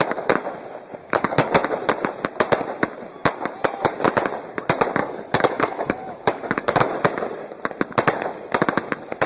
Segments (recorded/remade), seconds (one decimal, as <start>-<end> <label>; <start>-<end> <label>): 0.0-1.0 recorded; 1.0-1.5 remade; 1.5-5.0 recorded; 5.0-6.9 remade; 6.9-9.3 recorded